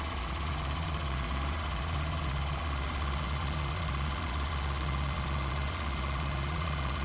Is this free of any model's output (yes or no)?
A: no